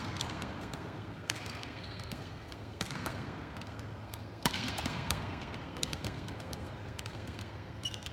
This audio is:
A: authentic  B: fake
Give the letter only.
B